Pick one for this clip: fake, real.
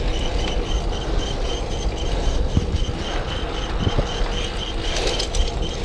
real